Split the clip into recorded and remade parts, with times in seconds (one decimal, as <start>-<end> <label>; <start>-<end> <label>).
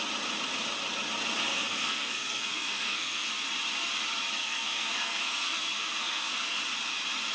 0.0-1.5 recorded; 1.5-3.3 remade; 3.3-4.4 recorded; 4.4-6.6 remade; 6.6-7.3 recorded